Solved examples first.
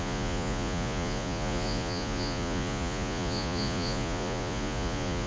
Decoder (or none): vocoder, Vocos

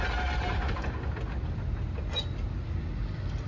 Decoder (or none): none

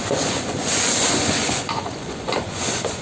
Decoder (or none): vocoder, Vocos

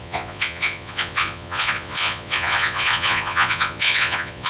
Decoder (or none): vocoder, Vocos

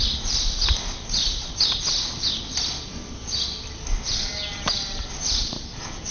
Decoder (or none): none